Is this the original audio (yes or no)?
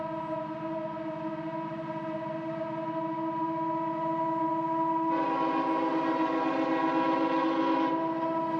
yes